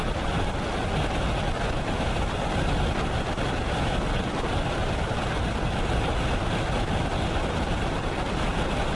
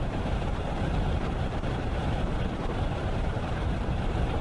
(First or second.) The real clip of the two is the first